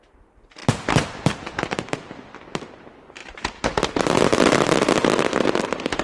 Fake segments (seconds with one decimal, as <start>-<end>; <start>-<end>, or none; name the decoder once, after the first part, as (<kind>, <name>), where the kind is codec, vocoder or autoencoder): none